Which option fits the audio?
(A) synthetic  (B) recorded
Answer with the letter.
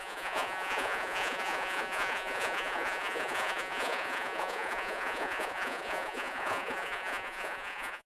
A